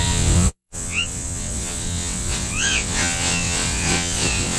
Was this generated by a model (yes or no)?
yes